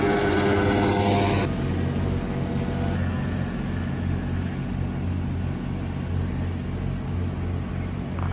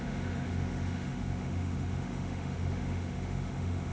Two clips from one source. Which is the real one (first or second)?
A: first